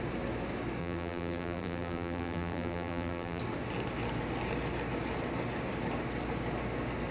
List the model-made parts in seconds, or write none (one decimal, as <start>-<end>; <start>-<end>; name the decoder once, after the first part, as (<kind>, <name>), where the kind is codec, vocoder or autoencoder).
0.8-3.4 (vocoder, BigVGAN v2)